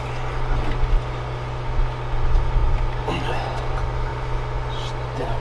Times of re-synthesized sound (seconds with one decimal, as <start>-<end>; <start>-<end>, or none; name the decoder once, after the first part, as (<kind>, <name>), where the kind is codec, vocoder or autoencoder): none

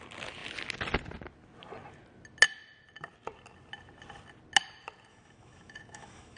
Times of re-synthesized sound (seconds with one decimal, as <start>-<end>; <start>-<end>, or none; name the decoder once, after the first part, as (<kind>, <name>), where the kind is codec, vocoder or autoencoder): 5.1-6.4 (autoencoder, DAC-VAE)

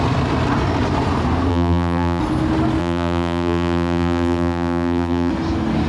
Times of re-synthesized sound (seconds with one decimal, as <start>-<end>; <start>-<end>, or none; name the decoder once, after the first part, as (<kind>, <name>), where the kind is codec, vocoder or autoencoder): 1.5-2.2 (vocoder, BigVGAN v2); 2.8-5.3

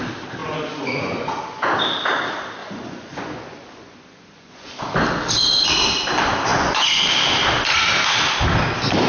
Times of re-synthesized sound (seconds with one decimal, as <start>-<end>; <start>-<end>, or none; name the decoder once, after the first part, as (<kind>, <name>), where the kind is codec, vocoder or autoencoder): 0.4-1.3 (vocoder, Vocos); 2.6-4.9; 6.5-7.0

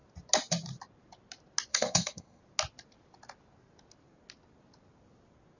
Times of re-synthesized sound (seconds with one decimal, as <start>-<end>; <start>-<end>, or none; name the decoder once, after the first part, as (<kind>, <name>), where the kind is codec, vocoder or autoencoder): 1.7-2.4 (codec, SNAC)